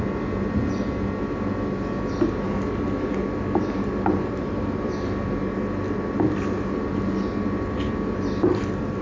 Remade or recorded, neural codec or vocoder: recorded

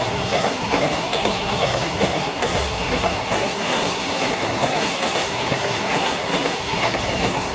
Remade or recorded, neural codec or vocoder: remade, codec, SNAC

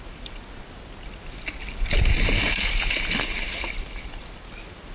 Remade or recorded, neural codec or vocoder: recorded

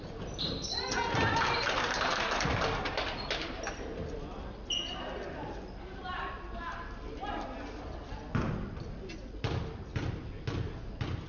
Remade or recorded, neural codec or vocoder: recorded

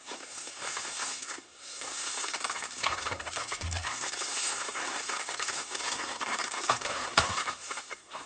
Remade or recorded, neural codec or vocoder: remade, codec, SNAC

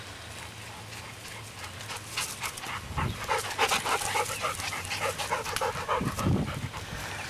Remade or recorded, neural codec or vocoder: recorded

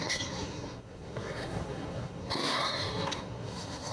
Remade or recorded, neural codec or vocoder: remade, codec, SNAC